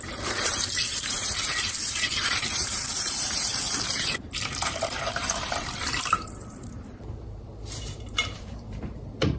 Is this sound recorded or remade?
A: remade